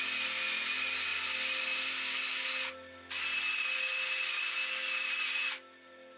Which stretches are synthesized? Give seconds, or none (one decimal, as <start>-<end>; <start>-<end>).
none